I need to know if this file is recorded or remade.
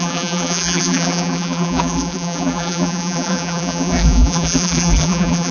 remade